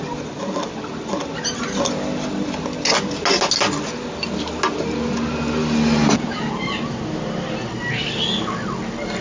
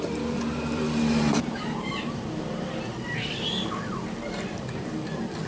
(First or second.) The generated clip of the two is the second